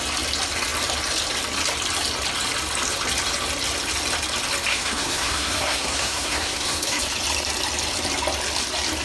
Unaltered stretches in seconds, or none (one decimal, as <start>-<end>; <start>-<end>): 0.0-4.7; 7.0-9.0

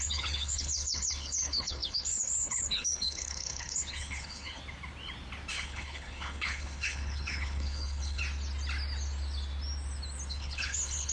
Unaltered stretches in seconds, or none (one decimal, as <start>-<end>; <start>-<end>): 4.6-5.5; 8.2-10.3